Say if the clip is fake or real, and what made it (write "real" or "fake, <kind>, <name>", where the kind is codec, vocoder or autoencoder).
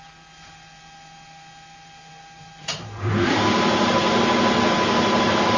real